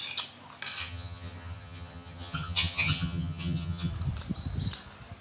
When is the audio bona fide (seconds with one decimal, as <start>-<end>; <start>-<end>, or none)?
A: 0.0-0.8; 3.9-5.2